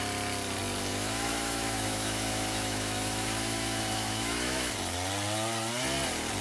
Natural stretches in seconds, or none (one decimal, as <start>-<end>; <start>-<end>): 0.0-0.9; 4.7-6.4